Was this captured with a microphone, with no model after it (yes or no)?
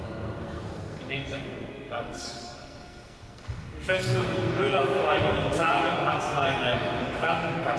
no